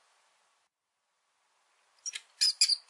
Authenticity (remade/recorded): recorded